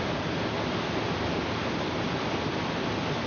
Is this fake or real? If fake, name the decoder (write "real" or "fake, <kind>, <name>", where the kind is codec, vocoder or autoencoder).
real